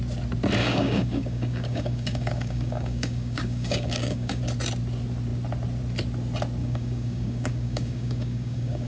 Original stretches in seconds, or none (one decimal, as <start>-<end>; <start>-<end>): 0.0-0.6; 4.4-6.6